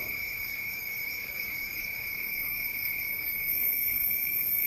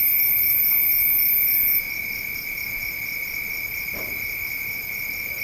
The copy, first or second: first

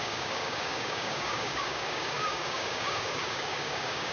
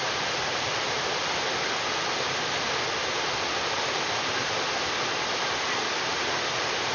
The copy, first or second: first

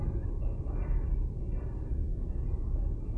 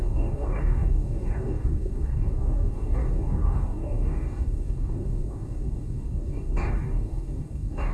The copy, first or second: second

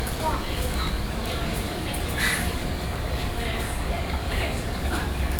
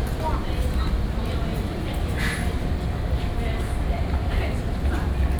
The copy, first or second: first